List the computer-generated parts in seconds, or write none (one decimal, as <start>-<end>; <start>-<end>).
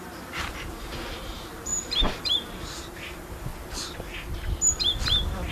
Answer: 0.0-3.5; 4.7-5.5